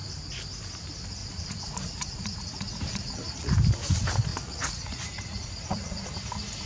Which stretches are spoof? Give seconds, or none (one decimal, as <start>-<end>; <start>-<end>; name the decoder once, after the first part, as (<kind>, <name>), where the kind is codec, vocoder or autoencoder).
1.2-3.5 (vocoder, Vocos); 4.3-6.1